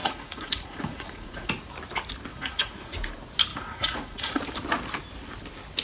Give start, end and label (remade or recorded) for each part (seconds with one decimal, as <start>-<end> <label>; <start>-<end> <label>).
0.0-1.5 remade; 1.5-2.3 recorded; 2.3-2.9 remade; 2.9-3.5 recorded; 3.5-4.4 remade; 4.4-5.8 recorded